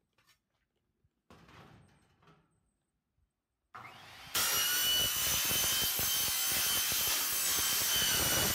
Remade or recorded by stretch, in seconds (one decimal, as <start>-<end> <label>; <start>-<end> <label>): 0.0-7.5 recorded; 7.5-8.5 remade

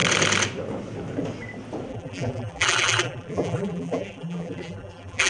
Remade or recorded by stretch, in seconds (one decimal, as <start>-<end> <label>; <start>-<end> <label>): 0.0-1.9 recorded; 1.9-5.3 remade

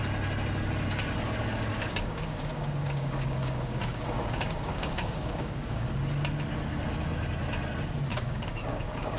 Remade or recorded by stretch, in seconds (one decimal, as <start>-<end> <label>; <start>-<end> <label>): 0.0-1.7 recorded; 1.7-5.9 remade; 5.9-8.1 recorded; 8.1-9.2 remade

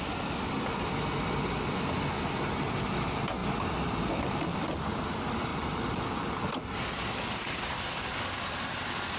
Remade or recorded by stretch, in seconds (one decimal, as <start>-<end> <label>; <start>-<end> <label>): 0.0-9.2 recorded

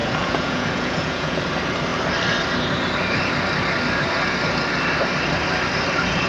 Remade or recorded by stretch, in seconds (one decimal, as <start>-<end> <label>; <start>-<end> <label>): 0.0-1.4 remade; 1.4-6.3 recorded